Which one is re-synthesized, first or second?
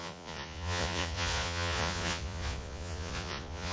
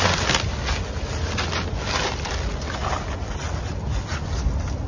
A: first